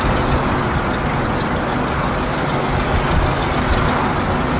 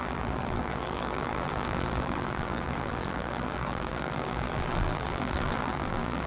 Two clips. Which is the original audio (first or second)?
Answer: first